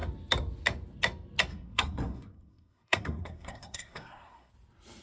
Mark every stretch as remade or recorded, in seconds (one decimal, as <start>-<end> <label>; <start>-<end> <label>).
0.0-1.5 recorded; 1.5-4.5 remade; 4.5-5.0 recorded